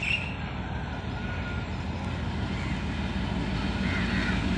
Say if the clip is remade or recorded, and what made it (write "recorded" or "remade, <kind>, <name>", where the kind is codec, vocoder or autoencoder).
recorded